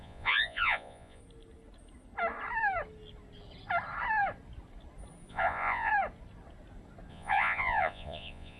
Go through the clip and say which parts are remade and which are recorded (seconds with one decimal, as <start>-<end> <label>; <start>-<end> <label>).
0.0-1.2 remade; 1.2-5.3 recorded; 5.3-5.9 remade; 5.9-7.1 recorded; 7.1-8.6 remade